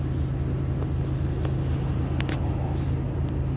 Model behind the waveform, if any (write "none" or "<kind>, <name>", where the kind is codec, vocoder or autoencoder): none